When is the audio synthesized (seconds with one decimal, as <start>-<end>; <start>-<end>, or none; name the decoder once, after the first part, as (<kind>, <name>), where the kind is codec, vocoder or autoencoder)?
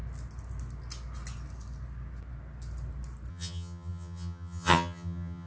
3.3-5.5 (vocoder, HiFi-GAN)